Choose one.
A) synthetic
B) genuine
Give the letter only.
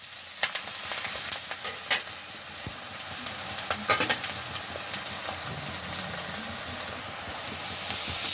B